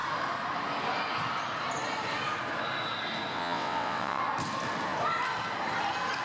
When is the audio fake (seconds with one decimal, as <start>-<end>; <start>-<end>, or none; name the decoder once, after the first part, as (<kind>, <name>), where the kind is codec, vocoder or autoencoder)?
3.3-4.2 (vocoder, WaveNeXt)

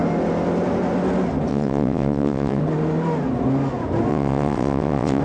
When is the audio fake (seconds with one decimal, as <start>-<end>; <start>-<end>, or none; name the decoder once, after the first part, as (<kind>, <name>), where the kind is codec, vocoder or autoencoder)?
1.5-2.6 (vocoder, WaveNeXt); 4.1-5.2

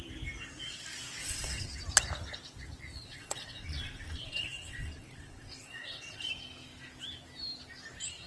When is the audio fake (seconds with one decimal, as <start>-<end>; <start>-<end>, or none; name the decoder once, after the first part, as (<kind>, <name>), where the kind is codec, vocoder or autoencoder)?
1.2-1.8 (vocoder, WaveNeXt); 2.9-6.3

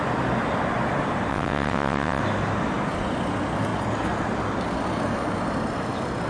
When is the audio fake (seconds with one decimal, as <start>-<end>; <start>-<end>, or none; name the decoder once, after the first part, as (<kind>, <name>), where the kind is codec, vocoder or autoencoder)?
1.3-2.2 (vocoder, WaveNeXt)

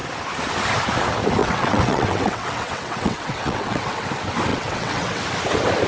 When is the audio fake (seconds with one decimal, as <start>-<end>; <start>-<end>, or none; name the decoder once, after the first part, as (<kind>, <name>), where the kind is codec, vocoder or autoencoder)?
1.4-4.1 (vocoder, WaveNeXt); 4.5-5.2